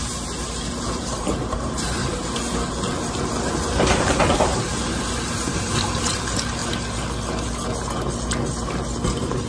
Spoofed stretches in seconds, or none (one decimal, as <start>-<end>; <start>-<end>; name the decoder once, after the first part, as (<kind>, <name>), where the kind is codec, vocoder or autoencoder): 0.0-6.6 (vocoder, BigVGAN v2); 9.1-9.5